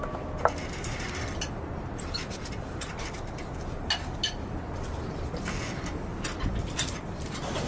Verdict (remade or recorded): recorded